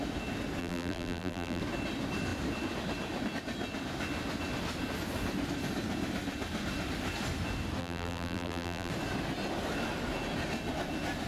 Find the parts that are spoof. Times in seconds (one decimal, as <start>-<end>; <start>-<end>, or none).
0.6-1.6; 7.8-8.9